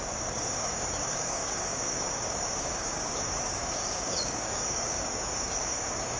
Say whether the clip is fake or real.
fake